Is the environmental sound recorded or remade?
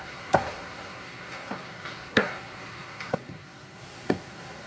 remade